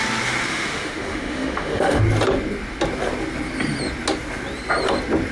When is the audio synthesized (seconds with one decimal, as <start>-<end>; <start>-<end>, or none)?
0.5-2.0